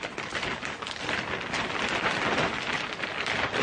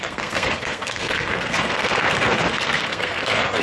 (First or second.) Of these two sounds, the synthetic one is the second